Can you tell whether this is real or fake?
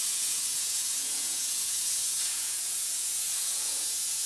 fake